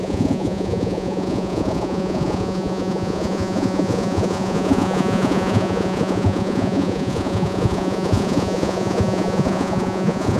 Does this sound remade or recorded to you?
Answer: remade